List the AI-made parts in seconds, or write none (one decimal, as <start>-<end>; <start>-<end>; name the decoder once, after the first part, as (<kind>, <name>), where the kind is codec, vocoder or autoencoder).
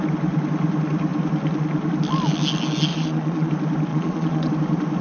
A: 2.9-3.5 (vocoder, Vocos); 3.9-4.5